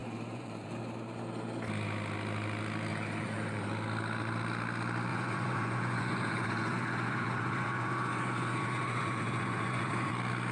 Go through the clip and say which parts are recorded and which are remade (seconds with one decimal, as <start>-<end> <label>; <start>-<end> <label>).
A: 0.0-0.8 remade; 0.8-2.9 recorded; 2.9-3.7 remade; 3.7-5.1 recorded; 5.1-10.1 remade; 10.1-10.5 recorded